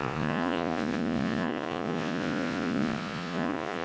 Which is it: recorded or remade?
remade